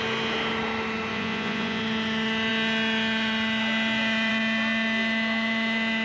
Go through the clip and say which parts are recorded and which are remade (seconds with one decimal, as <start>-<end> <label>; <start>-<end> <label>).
0.0-1.1 recorded; 1.1-1.8 remade; 1.8-6.0 recorded